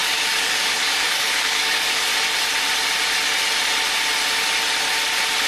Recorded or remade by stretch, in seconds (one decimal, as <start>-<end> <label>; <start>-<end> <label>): 0.0-2.1 remade; 2.1-5.5 recorded